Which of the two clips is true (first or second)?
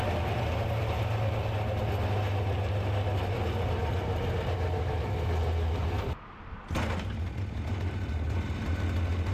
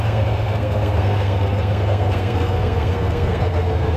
first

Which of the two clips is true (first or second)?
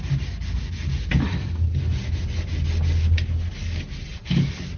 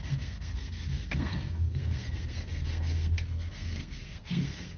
first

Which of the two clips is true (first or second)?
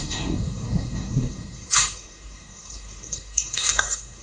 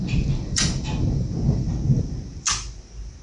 second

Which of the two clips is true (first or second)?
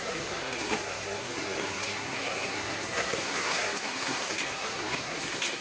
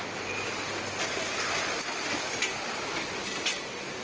second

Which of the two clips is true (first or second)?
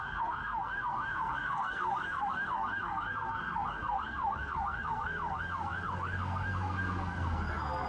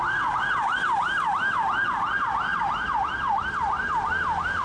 second